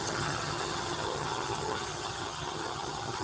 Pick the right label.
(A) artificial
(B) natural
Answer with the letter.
A